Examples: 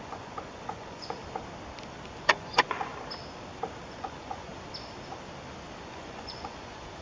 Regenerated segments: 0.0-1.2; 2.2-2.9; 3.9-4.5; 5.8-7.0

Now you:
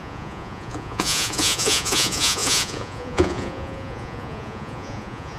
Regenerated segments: 0.0-5.4

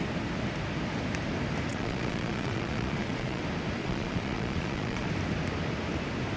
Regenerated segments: 1.7-3.4; 3.8-5.1

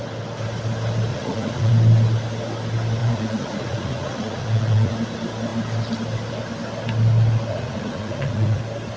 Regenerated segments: 1.1-1.7; 3.0-4.9; 7.5-8.6

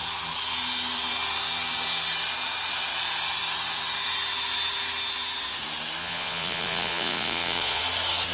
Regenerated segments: 6.0-7.8